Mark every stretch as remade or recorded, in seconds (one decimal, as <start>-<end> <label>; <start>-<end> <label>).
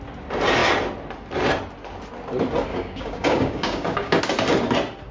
0.0-2.7 recorded; 2.7-4.2 remade; 4.2-5.1 recorded